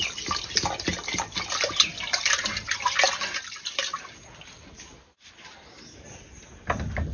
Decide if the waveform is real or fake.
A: real